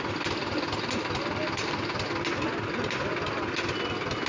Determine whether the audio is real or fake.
real